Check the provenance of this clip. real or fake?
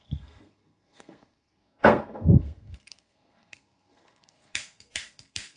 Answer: fake